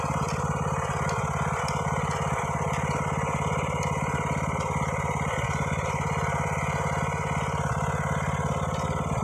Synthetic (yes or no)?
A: no